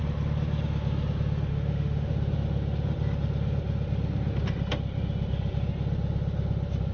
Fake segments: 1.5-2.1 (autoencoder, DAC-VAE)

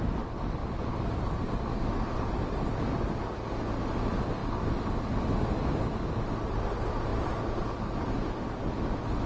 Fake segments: 0.6-2.4 (vocoder, BigVGAN v2)

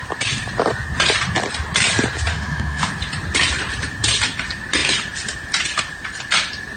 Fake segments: 2.3-2.9 (autoencoder, DAC-VAE)